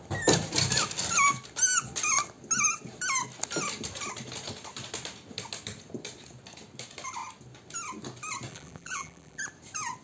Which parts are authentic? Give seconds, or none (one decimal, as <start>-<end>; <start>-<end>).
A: 0.0-8.5; 9.4-10.0